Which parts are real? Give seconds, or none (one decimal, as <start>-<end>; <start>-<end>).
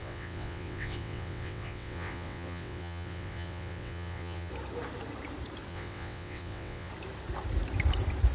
4.5-5.7; 6.9-8.3